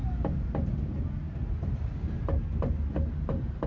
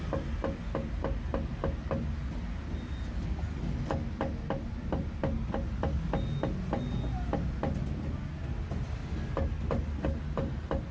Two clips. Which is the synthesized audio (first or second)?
first